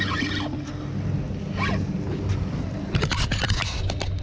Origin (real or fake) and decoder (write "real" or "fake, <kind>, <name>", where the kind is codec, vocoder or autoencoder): real